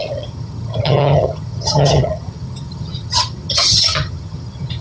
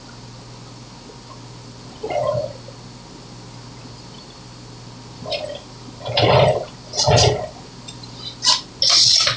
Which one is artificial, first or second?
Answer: first